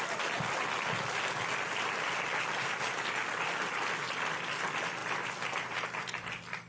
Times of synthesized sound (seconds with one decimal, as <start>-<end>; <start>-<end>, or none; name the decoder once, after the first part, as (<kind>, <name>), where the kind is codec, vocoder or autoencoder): none